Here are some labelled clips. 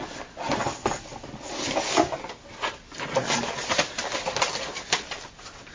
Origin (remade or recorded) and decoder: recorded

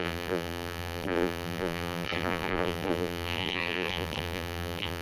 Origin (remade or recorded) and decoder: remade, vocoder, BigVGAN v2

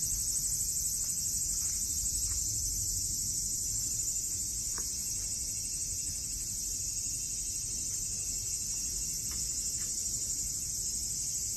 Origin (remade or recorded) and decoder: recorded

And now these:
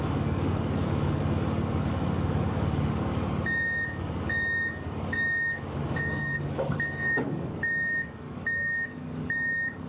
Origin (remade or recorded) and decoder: remade, codec, DAC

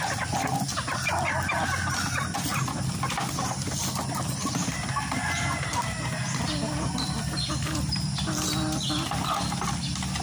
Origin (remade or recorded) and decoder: recorded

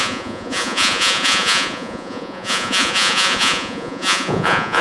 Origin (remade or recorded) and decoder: remade, vocoder, Vocos